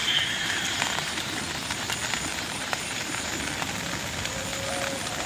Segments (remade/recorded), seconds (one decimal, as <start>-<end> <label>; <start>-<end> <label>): 0.0-1.9 remade; 1.9-2.3 recorded; 2.3-3.3 remade; 3.3-5.3 recorded